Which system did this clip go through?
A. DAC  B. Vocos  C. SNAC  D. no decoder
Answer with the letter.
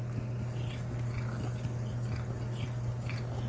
D